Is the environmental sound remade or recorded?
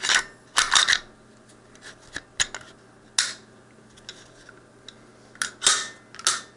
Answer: recorded